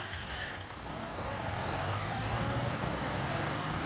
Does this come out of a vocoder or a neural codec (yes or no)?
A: yes